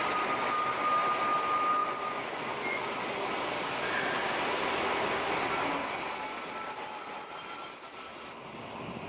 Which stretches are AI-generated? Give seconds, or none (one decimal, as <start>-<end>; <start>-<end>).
1.8-2.8